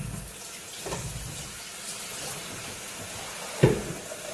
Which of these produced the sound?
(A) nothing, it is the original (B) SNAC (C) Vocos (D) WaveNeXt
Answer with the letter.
A